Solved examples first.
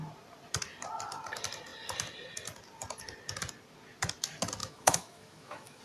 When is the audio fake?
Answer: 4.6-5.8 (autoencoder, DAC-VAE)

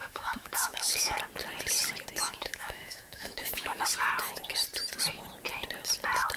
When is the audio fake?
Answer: 0.0-1.2 (autoencoder, DAC-VAE); 2.2-3.8

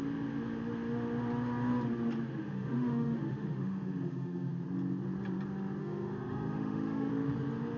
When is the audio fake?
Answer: 2.4-4.5 (autoencoder, DAC-VAE); 5.8-7.1

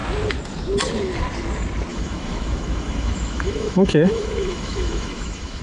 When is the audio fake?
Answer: 1.9-5.6 (autoencoder, DAC-VAE)

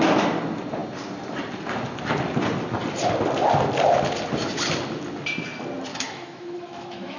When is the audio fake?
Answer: 5.9-7.2 (autoencoder, DAC-VAE)

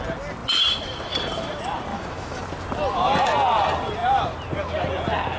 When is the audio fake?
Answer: 1.9-2.4 (autoencoder, DAC-VAE)

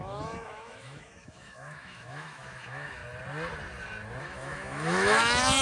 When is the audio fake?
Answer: 0.0-3.0 (autoencoder, DAC-VAE); 4.2-5.6